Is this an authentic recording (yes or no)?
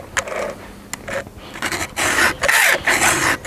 yes